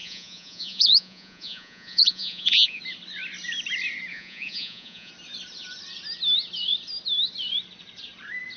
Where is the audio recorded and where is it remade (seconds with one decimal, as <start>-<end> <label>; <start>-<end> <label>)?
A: 0.0-2.8 remade; 2.8-4.1 recorded; 4.1-5.1 remade; 5.1-8.6 recorded